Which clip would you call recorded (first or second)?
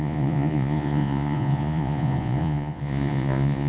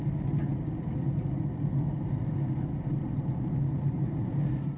second